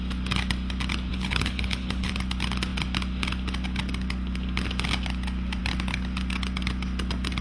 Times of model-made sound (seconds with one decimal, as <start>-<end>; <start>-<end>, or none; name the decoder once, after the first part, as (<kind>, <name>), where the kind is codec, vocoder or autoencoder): 1.1-2.1 (codec, HILCodec)

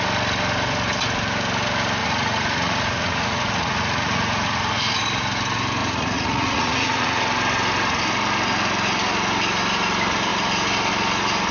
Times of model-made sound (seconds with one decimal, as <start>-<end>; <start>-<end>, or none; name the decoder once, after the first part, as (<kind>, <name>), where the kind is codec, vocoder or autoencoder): 2.0-4.9 (vocoder, Vocos); 5.8-7.2

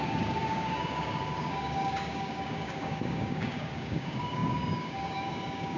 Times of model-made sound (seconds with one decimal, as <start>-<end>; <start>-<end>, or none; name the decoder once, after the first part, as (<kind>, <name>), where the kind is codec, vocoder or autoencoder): 0.0-5.8 (codec, DAC)

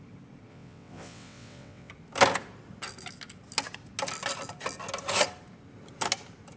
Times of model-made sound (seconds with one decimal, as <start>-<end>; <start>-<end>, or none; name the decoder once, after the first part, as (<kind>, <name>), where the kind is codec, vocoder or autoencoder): 0.5-1.9 (vocoder, WaveNeXt)

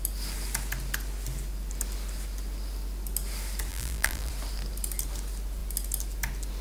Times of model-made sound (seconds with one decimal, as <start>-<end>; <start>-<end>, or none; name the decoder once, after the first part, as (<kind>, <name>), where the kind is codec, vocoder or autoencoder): 3.7-4.3 (vocoder, BigVGAN v2)

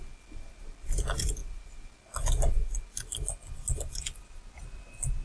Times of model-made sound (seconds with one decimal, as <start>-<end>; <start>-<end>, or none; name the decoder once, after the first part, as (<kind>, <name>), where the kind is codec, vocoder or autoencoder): none

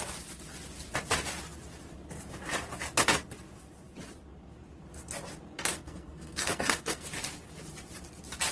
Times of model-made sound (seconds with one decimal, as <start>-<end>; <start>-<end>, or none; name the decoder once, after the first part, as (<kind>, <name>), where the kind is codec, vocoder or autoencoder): 5.7-7.1 (codec, SNAC)